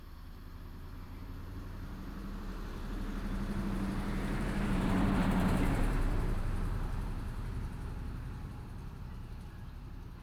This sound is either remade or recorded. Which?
remade